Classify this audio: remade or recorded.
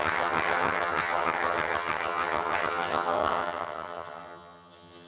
remade